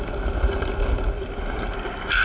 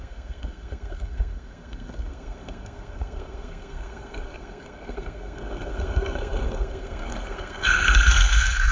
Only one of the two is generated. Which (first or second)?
second